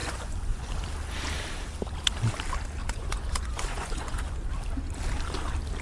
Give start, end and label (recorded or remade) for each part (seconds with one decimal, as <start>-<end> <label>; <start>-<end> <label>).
0.0-0.7 remade; 0.7-2.8 recorded; 2.8-4.5 remade; 4.5-5.8 recorded